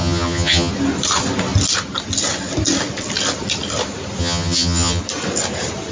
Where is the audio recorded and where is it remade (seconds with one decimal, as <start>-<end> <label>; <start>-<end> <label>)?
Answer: 0.0-0.7 remade; 0.7-4.2 recorded; 4.2-5.0 remade; 5.0-5.9 recorded